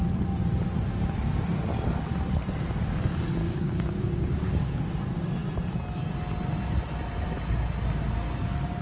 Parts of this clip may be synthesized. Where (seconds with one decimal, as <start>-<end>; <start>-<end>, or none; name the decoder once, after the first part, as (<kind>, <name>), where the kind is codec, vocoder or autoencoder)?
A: 3.4-4.8 (codec, DAC)